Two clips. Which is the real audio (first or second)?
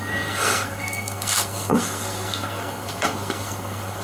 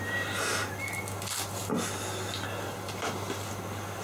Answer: second